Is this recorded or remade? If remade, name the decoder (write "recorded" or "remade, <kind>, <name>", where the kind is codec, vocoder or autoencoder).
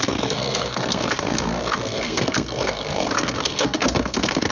remade, codec, SNAC